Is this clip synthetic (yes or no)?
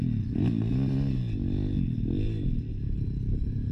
no